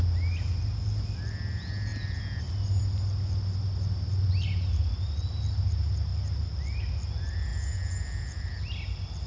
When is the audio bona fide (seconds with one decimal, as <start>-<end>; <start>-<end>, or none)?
0.0-9.3